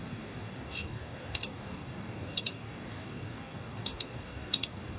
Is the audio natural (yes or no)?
no